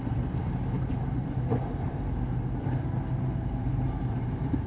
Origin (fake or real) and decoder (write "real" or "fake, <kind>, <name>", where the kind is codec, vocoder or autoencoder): fake, vocoder, BigVGAN v2